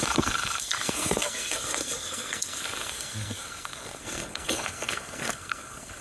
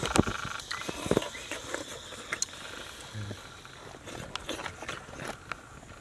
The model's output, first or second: first